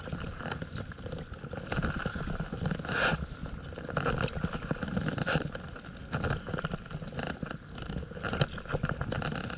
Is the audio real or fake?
real